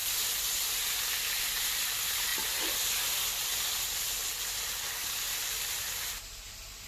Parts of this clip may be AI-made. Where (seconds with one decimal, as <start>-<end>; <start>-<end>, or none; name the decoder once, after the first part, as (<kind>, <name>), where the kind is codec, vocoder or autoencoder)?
none